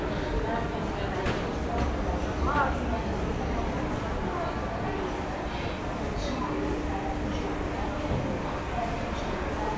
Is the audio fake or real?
real